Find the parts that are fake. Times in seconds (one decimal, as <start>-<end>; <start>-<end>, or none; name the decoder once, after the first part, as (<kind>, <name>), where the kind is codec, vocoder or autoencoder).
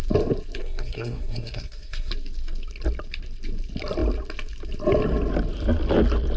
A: 0.6-2.1 (codec, SNAC)